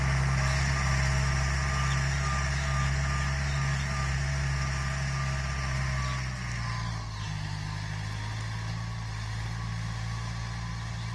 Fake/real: real